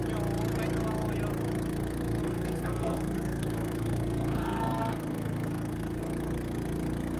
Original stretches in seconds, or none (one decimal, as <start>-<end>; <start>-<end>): 0.0-2.2; 6.0-7.2